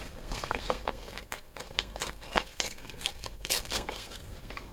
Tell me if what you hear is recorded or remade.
remade